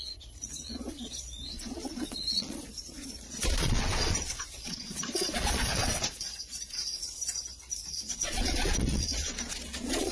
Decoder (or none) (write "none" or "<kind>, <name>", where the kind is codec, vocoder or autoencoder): vocoder, Vocos